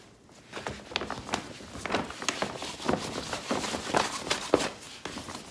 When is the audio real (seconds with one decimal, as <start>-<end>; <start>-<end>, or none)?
0.0-5.5